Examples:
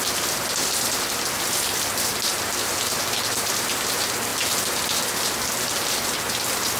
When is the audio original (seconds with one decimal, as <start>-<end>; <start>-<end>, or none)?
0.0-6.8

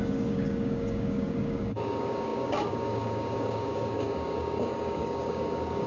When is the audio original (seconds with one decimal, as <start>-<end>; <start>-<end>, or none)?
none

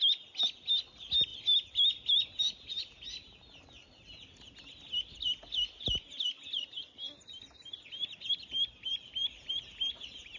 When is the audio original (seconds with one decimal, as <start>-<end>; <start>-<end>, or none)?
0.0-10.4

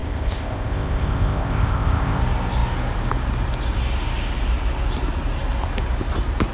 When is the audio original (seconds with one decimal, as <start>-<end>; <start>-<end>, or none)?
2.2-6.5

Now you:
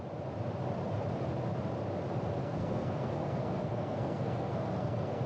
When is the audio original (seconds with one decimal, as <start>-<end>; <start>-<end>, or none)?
0.0-2.4

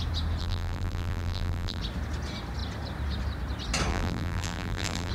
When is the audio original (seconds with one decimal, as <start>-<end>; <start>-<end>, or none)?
0.0-0.4; 1.8-3.9